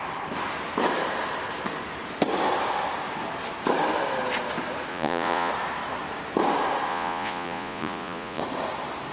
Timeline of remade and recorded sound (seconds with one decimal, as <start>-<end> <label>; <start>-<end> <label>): 0.0-4.9 recorded; 4.9-5.5 remade; 5.5-6.9 recorded; 6.9-8.4 remade; 8.4-9.1 recorded